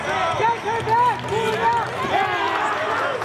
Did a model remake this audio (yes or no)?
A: no